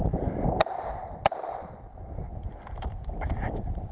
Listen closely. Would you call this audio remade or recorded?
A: recorded